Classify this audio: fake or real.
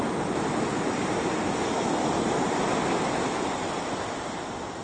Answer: fake